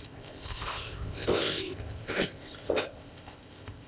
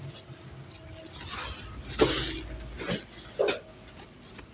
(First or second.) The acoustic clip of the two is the second